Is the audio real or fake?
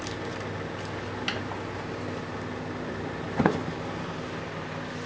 real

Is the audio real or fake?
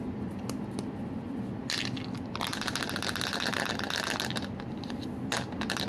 real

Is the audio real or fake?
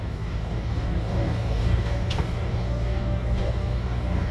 fake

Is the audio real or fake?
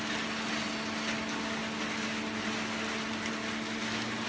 real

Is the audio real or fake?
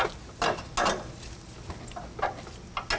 real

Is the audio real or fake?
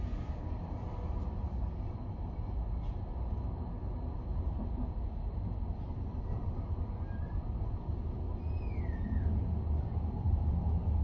real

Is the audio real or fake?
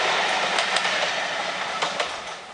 real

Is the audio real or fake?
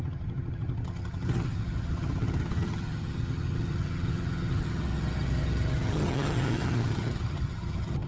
fake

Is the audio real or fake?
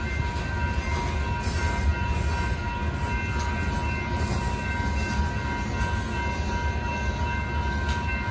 real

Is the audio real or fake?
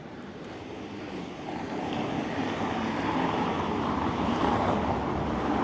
fake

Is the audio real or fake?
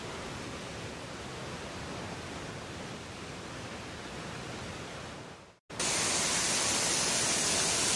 real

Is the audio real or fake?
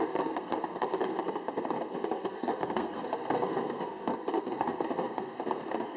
fake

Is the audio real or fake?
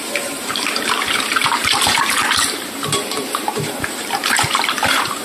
fake